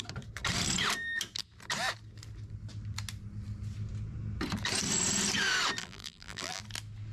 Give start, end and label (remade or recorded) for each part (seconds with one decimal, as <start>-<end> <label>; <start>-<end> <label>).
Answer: 0.0-5.8 recorded; 5.8-6.6 remade; 6.6-7.1 recorded